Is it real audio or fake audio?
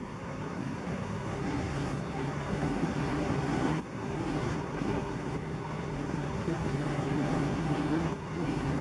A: fake